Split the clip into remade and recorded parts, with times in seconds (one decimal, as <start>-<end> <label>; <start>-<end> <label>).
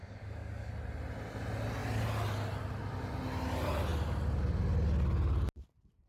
0.0-0.7 remade; 0.7-6.1 recorded